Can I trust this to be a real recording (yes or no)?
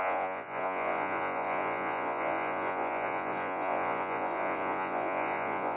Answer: no